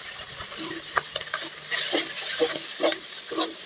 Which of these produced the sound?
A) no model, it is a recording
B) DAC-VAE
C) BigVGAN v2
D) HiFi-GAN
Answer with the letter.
A